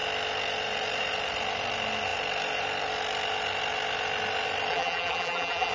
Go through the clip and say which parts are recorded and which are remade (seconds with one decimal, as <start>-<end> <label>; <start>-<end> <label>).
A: 0.0-4.7 recorded; 4.7-5.7 remade